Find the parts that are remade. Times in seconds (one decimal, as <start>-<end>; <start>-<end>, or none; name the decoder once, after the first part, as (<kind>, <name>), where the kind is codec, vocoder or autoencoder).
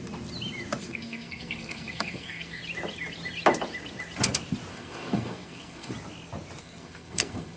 0.8-2.6 (codec, SNAC); 4.7-5.9; 6.6-7.6